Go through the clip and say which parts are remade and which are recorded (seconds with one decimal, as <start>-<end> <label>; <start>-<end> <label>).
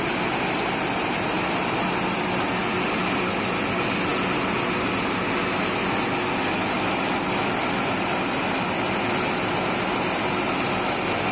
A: 0.0-11.3 recorded